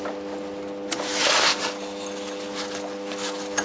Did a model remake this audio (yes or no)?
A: no